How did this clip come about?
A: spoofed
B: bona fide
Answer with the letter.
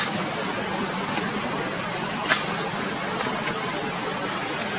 B